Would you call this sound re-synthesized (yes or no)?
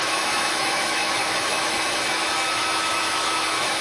yes